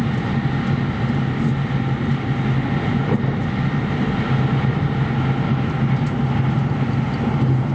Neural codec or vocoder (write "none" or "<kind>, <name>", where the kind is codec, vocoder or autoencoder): none